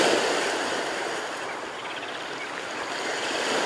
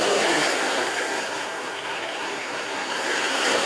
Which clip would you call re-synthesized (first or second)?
second